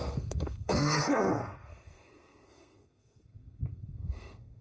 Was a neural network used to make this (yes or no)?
yes